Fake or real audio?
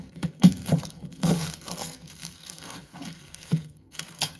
fake